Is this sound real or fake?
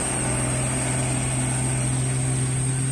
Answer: real